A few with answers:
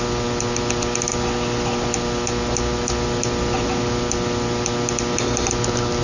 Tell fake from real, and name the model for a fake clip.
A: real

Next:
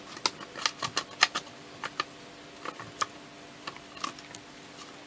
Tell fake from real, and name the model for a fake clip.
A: real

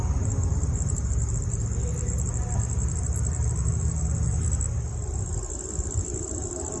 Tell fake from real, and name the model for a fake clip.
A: real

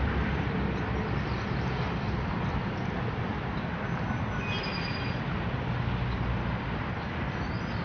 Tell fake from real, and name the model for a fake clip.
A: real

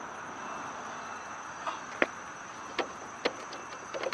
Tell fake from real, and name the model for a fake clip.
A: real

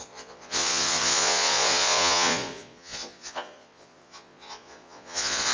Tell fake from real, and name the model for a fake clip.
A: fake, vocoder, Vocos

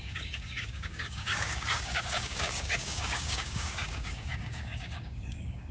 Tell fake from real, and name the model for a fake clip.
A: fake, codec, DAC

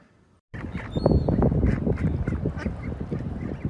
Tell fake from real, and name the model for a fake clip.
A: real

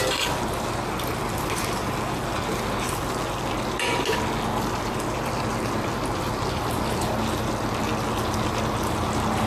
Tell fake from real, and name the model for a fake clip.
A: real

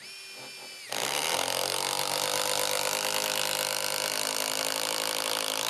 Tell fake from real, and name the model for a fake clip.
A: real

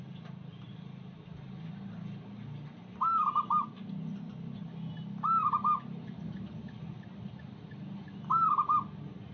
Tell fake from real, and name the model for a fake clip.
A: real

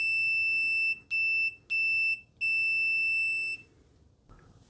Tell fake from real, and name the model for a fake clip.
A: real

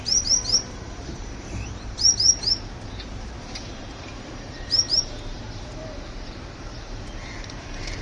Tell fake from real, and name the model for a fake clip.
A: fake, vocoder, BigVGAN v2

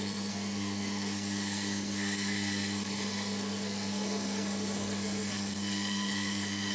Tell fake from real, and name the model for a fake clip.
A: fake, codec, SNAC